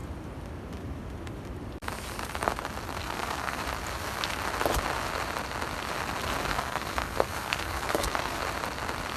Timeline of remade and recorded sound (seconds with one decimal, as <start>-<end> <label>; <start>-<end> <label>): 0.0-3.0 recorded; 3.0-3.6 remade; 3.6-6.5 recorded; 6.5-8.4 remade; 8.4-9.2 recorded